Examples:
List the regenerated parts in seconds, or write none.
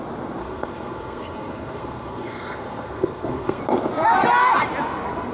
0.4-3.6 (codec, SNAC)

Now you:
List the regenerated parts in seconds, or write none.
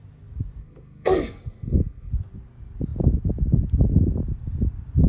0.6-2.1 (codec, SNAC)